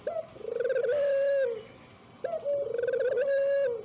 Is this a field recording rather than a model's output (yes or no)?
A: yes